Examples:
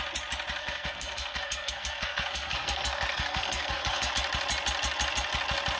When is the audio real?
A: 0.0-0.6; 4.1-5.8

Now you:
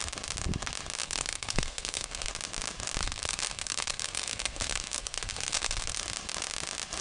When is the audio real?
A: 0.0-1.0; 2.3-3.0; 6.0-7.0

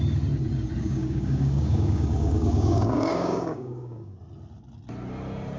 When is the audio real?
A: 0.0-0.8; 4.2-5.6